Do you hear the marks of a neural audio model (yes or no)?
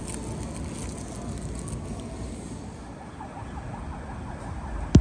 no